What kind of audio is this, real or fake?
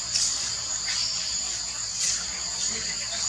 real